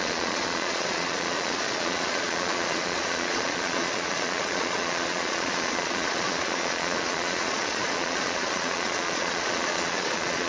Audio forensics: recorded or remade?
remade